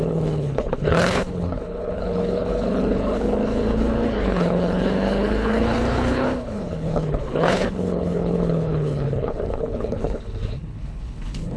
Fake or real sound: fake